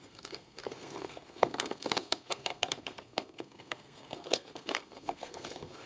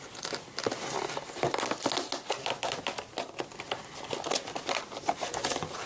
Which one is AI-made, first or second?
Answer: first